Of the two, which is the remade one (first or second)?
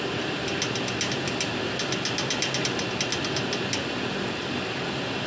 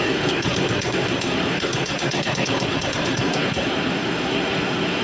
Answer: second